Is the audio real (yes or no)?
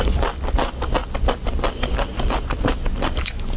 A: yes